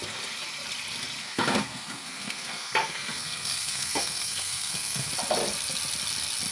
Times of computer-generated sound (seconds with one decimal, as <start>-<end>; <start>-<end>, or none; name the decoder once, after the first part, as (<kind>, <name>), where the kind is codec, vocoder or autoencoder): 1.2-5.1 (codec, SNAC)